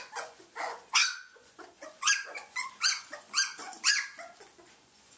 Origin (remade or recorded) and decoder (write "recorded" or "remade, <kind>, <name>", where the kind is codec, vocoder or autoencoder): remade, vocoder, Vocos